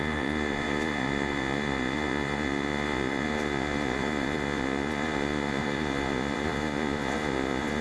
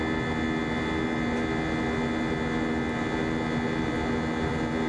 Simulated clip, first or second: first